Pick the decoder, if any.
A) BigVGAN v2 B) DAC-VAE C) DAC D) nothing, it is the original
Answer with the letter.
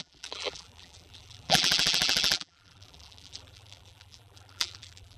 A